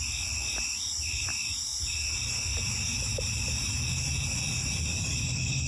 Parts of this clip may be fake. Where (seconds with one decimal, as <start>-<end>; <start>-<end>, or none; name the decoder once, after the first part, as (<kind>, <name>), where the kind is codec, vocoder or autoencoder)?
none